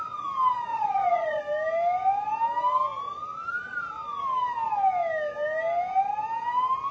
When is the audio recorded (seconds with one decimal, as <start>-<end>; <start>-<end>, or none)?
0.0-0.7; 1.4-6.9